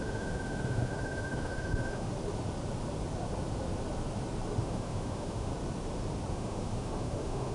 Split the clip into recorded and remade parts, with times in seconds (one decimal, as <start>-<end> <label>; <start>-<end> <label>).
0.0-2.1 remade; 2.1-4.6 recorded; 4.6-5.5 remade; 5.5-6.3 recorded; 6.3-7.5 remade